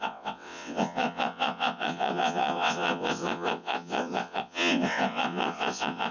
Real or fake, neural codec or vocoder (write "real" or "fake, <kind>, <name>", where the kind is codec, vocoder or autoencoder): fake, vocoder, WaveNeXt